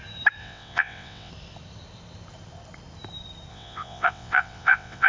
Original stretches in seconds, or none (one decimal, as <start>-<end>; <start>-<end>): 0.0-0.4; 1.3-3.5